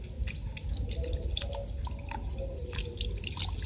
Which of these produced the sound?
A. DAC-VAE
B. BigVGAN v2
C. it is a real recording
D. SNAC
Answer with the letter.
C